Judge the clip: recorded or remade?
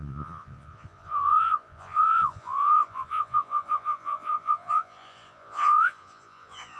remade